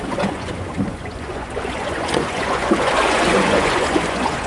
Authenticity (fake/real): fake